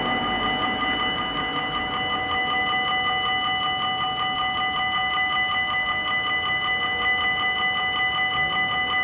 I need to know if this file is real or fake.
real